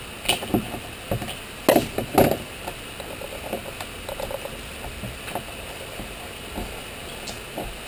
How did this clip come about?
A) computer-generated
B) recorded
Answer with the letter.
B